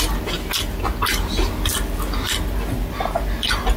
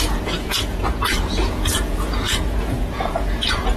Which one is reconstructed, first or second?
second